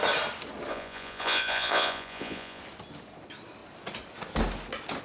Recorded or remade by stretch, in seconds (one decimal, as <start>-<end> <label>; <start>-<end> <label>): 0.0-0.7 recorded; 0.7-2.6 remade; 2.6-5.0 recorded